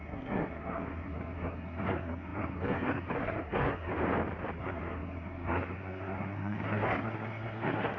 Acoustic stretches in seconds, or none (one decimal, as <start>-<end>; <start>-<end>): 3.9-4.6